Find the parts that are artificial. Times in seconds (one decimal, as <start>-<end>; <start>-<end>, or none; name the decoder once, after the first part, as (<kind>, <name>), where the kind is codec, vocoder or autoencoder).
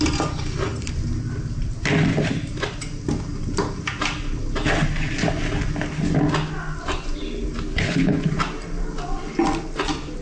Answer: 7.7-8.3 (codec, HILCodec)